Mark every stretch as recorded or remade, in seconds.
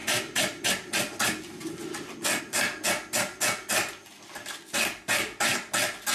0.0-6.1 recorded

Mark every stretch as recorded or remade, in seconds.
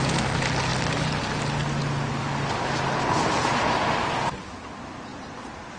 0.0-5.8 recorded